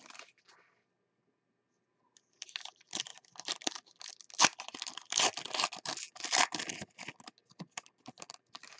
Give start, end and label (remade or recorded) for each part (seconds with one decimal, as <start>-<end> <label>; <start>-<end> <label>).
0.0-8.8 recorded